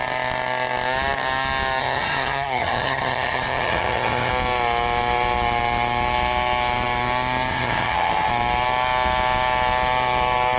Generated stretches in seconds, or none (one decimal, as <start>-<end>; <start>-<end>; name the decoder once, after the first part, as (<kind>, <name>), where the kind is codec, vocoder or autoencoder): 1.8-4.3 (vocoder, HiFi-GAN); 7.5-8.3